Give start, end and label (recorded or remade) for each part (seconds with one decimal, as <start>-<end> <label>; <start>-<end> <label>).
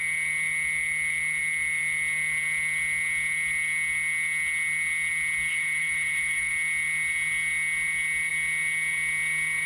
0.0-5.5 recorded; 5.5-6.5 remade; 6.5-9.7 recorded